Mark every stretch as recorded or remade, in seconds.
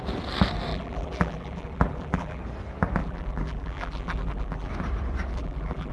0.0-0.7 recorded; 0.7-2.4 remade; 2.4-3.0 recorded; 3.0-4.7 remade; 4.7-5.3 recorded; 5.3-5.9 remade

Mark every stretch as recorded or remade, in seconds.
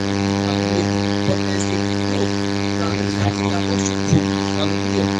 0.0-2.9 recorded; 2.9-3.5 remade; 3.5-5.2 recorded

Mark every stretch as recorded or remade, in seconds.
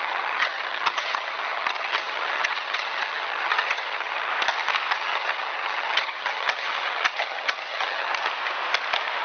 0.0-4.3 remade; 4.3-4.9 recorded; 4.9-8.1 remade; 8.1-9.2 recorded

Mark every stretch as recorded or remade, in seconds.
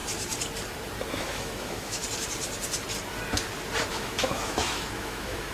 0.0-1.1 recorded; 1.1-2.0 remade; 2.0-3.9 recorded; 3.9-5.5 remade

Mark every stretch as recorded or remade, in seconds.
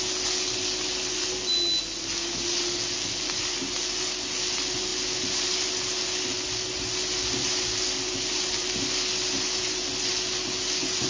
0.0-11.1 recorded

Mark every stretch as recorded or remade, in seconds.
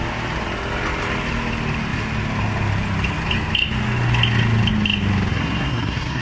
0.0-5.3 recorded; 5.3-6.2 remade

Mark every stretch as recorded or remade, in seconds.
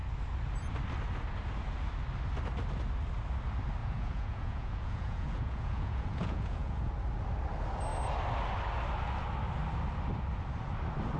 0.0-3.8 recorded; 3.8-6.9 remade; 6.9-11.2 recorded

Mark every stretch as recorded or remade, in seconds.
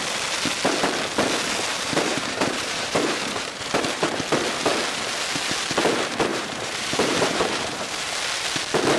0.0-1.7 recorded; 1.7-4.1 remade; 4.1-6.3 recorded; 6.3-8.1 remade; 8.1-9.0 recorded